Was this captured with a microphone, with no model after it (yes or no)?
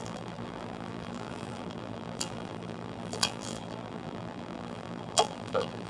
no